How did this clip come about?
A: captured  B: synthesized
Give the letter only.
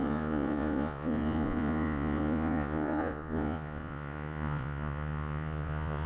B